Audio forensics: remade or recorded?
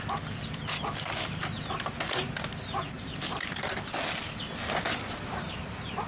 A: recorded